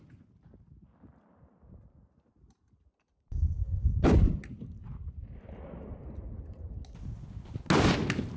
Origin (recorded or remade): recorded